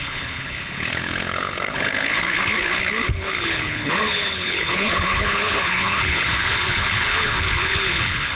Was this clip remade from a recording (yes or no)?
yes